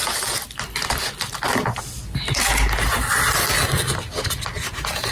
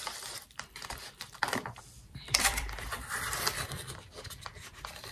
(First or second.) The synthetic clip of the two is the second